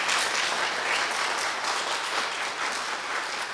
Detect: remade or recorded recorded